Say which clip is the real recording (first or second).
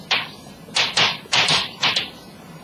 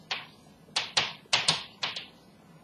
second